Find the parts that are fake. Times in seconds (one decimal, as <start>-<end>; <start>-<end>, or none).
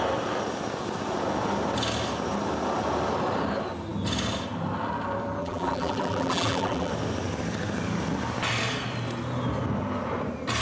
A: 5.4-6.9